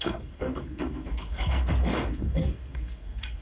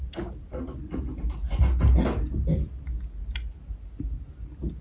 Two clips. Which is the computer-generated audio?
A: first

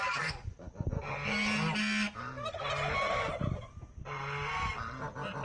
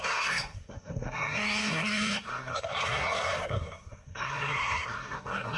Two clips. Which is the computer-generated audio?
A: second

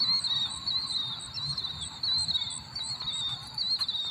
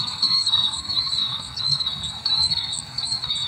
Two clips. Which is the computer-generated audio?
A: second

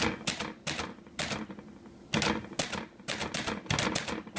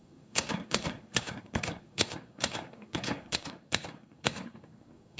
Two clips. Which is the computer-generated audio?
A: second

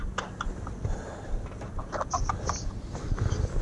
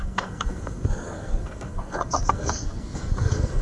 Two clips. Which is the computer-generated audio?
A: second